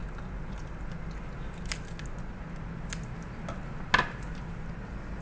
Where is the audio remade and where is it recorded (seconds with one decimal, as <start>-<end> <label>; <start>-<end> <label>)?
0.0-5.2 recorded